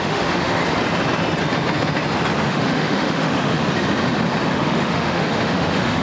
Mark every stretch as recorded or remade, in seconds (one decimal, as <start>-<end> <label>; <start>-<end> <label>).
0.0-0.6 remade; 0.6-2.5 recorded; 2.5-3.6 remade; 3.6-4.5 recorded; 4.5-6.0 remade